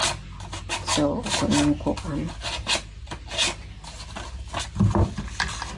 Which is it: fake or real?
real